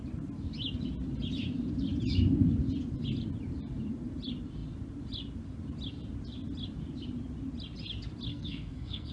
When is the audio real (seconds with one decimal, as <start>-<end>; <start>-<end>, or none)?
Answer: 0.0-8.3